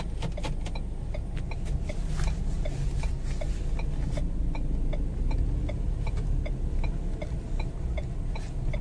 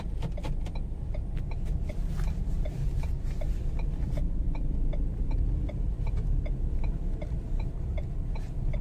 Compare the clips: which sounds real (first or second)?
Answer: first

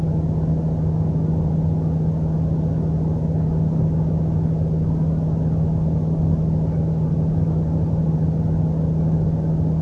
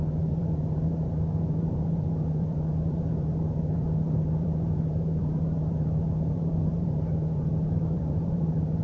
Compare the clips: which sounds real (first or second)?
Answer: first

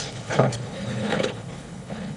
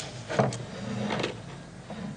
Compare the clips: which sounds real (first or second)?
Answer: second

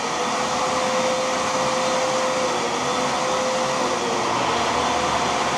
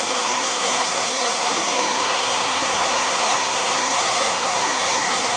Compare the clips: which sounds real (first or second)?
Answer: first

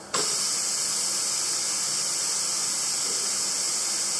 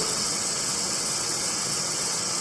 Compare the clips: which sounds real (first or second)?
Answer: first